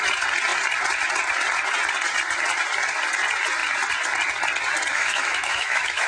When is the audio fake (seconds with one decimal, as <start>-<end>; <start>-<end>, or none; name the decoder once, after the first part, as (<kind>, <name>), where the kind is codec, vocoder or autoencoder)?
4.9-6.1 (autoencoder, DAC-VAE)